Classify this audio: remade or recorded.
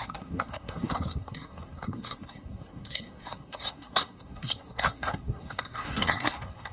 remade